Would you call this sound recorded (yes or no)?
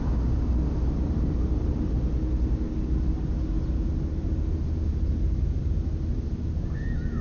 yes